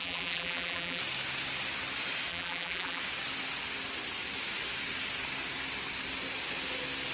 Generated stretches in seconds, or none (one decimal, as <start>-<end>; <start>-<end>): 0.0-1.0; 2.3-3.0